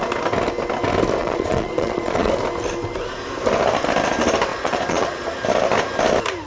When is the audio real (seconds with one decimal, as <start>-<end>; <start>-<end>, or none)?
0.0-1.2; 2.3-4.5; 5.3-6.5